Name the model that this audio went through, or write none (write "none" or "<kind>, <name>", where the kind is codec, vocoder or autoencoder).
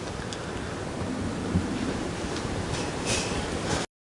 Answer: none